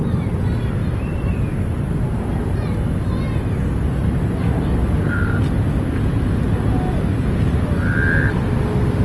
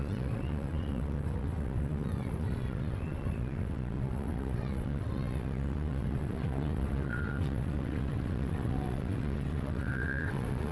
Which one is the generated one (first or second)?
second